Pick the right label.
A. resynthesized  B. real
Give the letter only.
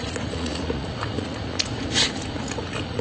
A